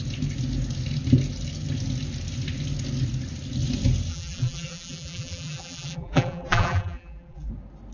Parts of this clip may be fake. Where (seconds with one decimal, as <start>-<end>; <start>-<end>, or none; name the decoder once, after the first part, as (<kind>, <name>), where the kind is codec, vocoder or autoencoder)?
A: 4.1-7.5 (vocoder, BigVGAN v2)